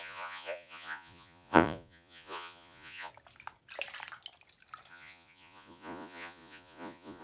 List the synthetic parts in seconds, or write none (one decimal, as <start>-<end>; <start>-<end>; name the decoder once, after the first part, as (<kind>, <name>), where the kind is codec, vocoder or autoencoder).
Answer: 0.0-3.1 (vocoder, Vocos); 4.9-7.2